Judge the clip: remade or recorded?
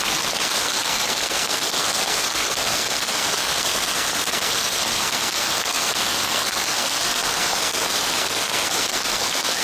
remade